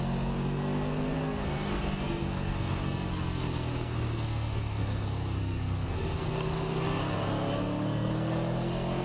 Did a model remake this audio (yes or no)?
yes